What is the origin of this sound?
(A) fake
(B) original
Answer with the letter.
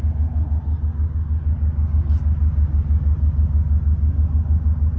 B